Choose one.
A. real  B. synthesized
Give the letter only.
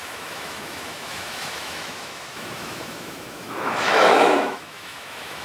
B